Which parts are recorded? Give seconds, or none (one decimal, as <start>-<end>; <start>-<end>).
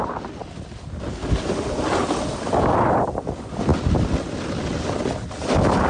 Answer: 0.0-5.9